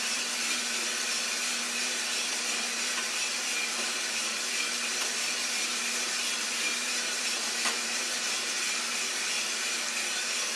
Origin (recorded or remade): remade